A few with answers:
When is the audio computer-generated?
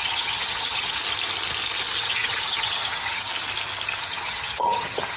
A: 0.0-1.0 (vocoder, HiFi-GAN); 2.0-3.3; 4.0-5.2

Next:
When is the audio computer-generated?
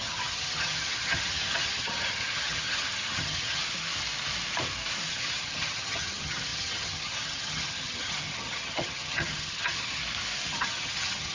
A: 0.0-3.6 (vocoder, HiFi-GAN); 5.1-10.0; 10.5-11.3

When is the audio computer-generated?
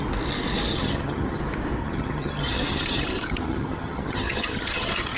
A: 0.7-1.4 (vocoder, HiFi-GAN); 1.8-5.2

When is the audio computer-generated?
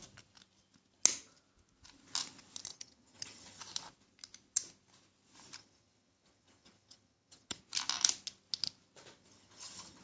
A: 2.7-3.6 (vocoder, HiFi-GAN); 5.6-7.6; 9.2-10.0